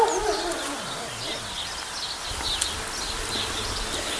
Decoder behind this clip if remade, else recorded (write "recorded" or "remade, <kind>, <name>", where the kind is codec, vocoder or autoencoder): recorded